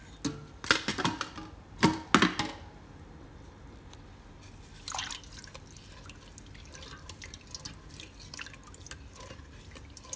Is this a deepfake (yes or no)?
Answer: no